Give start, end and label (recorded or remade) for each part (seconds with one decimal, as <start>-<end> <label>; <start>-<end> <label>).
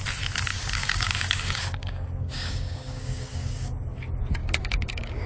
0.0-0.5 recorded; 0.5-3.7 remade; 3.7-4.4 recorded; 4.4-5.3 remade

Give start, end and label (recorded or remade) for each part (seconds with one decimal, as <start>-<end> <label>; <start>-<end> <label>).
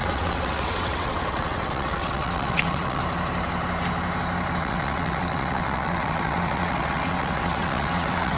0.0-3.0 remade; 3.0-4.6 recorded; 4.6-8.4 remade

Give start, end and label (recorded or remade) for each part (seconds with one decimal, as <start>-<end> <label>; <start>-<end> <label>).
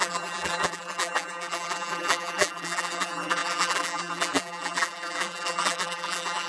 0.0-6.5 remade